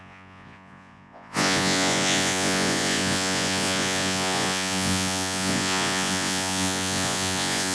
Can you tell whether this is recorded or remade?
remade